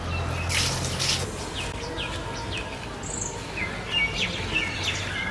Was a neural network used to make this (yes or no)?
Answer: no